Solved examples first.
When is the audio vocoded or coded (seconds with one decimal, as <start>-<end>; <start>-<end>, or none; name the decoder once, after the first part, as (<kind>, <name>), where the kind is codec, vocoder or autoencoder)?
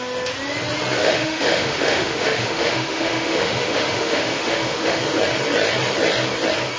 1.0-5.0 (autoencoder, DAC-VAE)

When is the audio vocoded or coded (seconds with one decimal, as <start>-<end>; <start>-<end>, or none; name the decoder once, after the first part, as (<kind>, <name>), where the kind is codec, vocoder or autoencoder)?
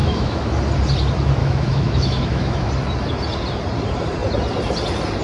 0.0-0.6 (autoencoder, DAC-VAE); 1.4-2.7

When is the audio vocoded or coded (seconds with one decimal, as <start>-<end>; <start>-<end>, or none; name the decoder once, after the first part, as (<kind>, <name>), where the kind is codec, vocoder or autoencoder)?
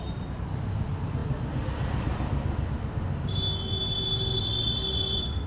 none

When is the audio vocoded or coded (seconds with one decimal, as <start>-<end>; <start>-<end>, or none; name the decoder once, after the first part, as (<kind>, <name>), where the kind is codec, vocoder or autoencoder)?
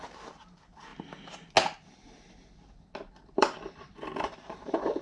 0.0-0.9 (vocoder, BigVGAN v2); 3.1-5.0